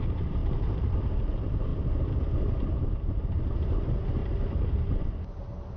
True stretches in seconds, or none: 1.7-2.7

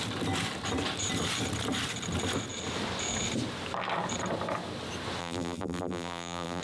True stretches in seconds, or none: 0.0-5.2

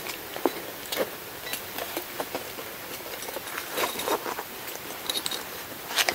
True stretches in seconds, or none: 1.5-2.2

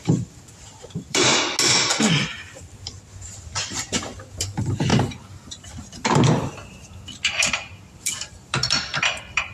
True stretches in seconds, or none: 1.3-2.3; 2.9-3.9